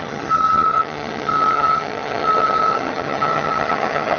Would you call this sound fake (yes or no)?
yes